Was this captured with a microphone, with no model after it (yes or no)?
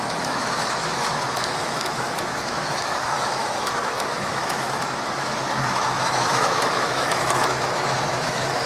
no